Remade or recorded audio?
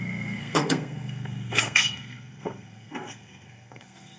remade